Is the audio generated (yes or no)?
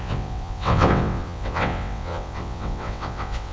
yes